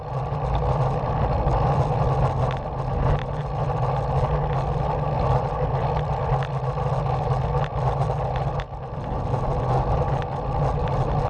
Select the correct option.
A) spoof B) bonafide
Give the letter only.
B